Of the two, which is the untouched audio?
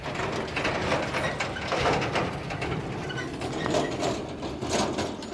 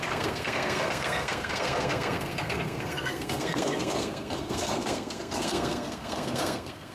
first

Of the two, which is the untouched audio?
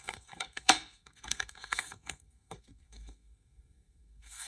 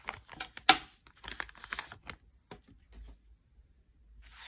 second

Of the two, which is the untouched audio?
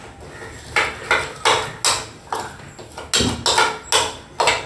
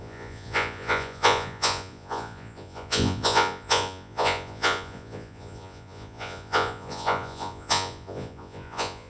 first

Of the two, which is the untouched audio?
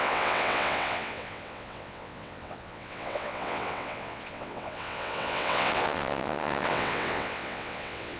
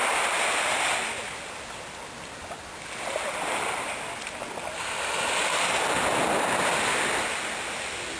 second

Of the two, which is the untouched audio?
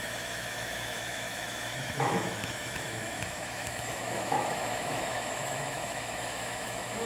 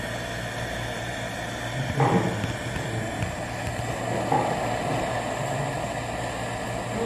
second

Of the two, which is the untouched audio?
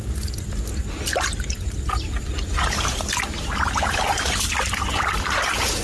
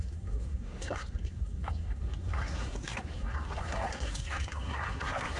first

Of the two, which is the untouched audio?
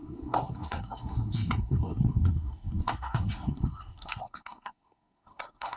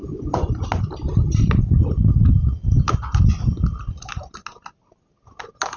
second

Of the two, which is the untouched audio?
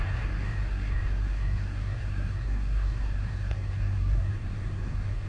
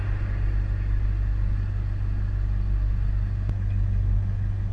second